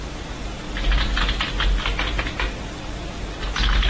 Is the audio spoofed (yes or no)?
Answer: no